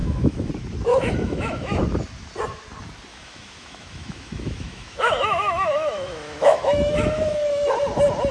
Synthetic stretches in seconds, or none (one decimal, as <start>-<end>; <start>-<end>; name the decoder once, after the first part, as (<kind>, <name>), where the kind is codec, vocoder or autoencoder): 0.0-0.5 (autoencoder, DAC-VAE); 0.9-1.8; 3.1-7.7